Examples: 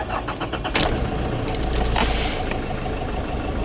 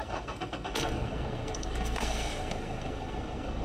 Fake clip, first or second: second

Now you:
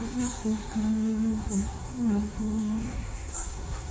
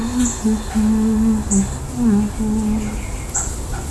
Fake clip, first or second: first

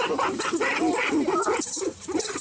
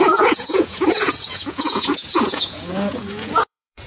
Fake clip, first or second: second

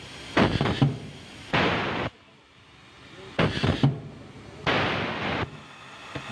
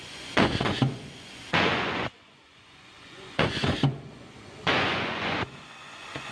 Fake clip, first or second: second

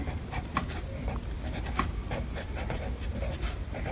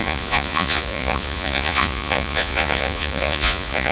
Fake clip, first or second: second